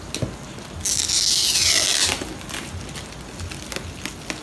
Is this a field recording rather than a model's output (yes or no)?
yes